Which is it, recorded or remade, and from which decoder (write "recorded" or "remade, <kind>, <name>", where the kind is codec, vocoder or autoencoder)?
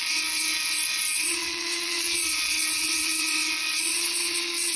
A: remade, vocoder, WaveNeXt